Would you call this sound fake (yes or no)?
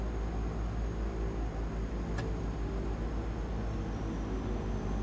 no